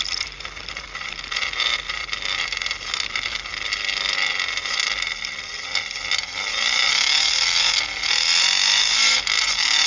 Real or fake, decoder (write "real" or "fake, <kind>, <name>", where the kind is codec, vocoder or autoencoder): real